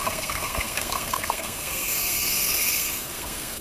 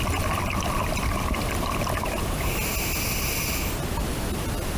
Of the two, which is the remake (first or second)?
first